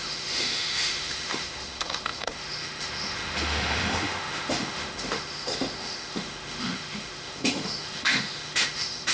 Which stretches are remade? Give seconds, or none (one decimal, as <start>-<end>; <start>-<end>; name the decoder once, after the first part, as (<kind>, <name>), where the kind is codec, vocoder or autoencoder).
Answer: 0.0-9.1 (autoencoder, DAC-VAE)